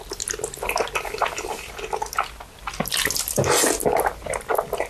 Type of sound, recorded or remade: recorded